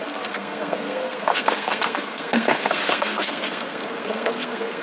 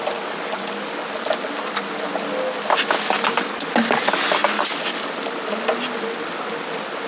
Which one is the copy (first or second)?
first